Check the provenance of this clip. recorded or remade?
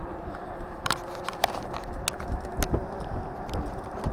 recorded